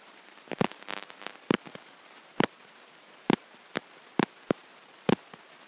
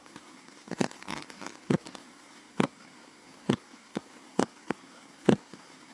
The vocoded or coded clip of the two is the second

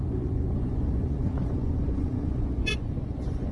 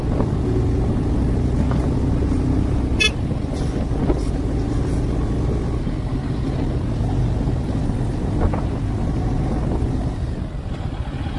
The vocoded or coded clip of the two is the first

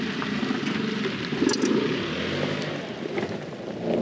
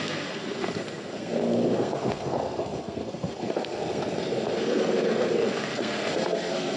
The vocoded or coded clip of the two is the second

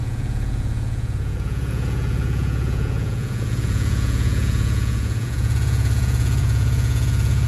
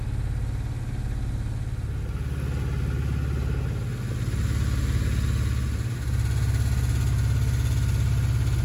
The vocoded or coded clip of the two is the first